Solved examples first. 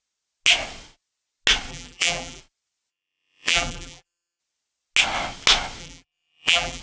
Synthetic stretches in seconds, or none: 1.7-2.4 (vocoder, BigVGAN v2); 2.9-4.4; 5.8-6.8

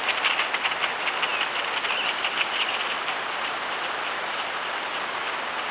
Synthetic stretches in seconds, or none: none

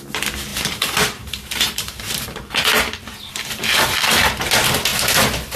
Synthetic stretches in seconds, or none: 0.5-2.5 (vocoder, BigVGAN v2)